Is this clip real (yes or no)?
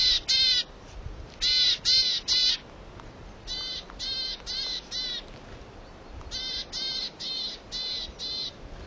yes